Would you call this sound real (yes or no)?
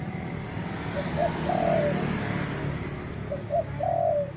yes